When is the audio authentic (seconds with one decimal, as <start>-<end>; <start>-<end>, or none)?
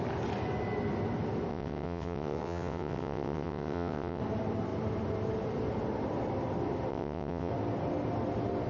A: 0.0-1.5; 4.2-6.9; 7.5-8.7